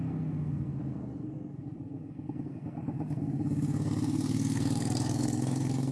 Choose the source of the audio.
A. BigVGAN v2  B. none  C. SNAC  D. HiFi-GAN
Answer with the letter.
C